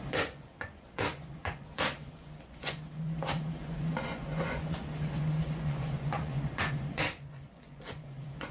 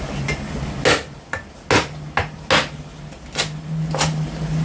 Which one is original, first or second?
second